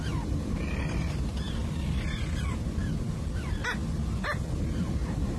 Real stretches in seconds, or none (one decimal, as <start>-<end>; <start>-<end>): 1.6-4.8